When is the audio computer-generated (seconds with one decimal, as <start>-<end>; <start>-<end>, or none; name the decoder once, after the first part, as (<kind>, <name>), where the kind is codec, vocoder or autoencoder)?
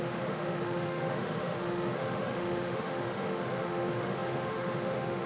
0.0-5.3 (autoencoder, DAC-VAE)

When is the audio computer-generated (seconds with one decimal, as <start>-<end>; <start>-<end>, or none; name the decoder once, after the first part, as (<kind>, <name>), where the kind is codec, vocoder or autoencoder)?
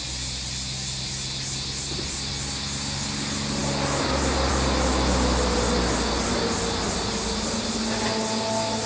none